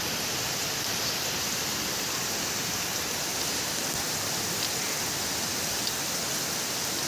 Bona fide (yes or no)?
yes